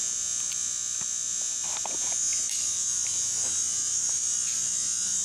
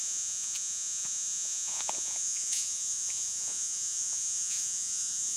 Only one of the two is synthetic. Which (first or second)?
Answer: second